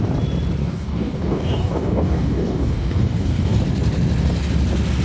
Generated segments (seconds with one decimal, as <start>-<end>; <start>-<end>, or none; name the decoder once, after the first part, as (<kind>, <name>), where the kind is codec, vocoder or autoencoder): 0.6-3.6 (codec, DAC)